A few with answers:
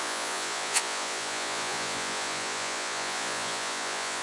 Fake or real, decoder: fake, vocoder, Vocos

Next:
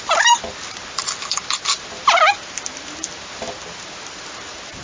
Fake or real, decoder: real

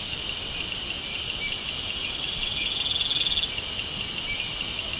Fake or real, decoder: real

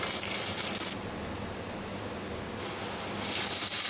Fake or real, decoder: real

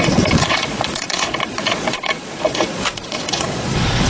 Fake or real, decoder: fake, vocoder, Vocos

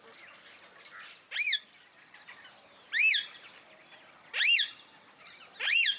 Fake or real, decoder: real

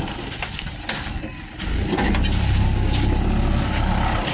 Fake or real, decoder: real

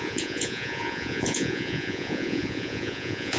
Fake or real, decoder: fake, vocoder, Vocos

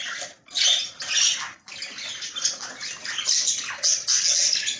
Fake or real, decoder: real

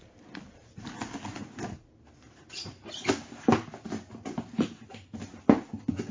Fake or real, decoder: real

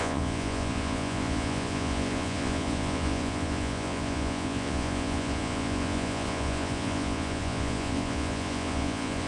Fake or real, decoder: fake, vocoder, Vocos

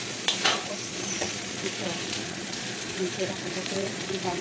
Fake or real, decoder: fake, vocoder, Vocos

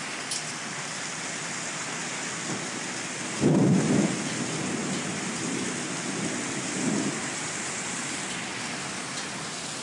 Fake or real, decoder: real